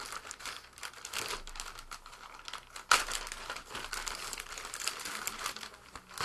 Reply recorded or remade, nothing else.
recorded